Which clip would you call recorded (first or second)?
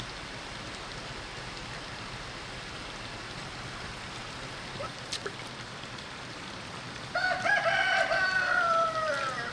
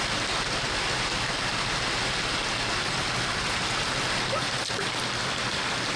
second